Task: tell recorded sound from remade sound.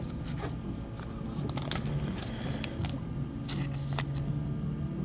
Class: recorded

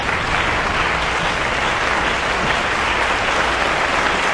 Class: recorded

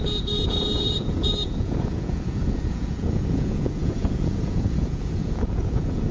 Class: remade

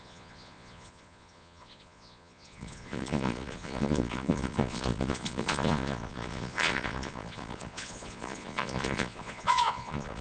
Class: remade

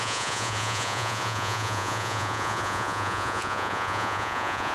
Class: remade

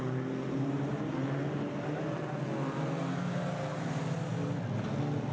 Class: recorded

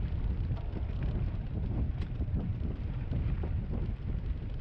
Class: recorded